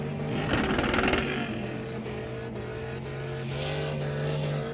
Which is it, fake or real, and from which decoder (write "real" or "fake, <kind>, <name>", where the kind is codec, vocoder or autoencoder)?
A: real